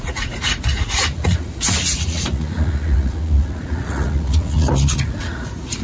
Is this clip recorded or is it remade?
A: remade